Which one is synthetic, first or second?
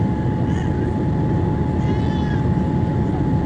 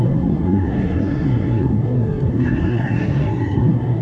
second